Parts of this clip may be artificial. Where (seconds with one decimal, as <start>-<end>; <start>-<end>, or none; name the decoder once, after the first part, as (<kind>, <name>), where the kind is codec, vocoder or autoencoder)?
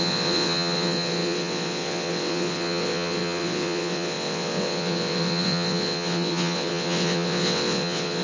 0.0-8.2 (vocoder, WaveNeXt)